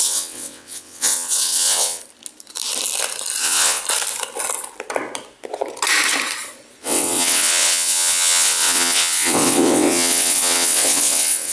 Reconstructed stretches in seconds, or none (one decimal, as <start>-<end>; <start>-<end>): 0.0-2.0; 3.4-3.8; 6.8-11.5